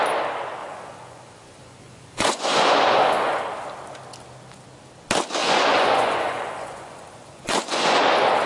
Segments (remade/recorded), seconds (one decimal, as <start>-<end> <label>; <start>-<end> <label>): 0.0-0.6 recorded; 0.6-3.4 remade; 3.4-5.4 recorded; 5.4-8.0 remade; 8.0-8.5 recorded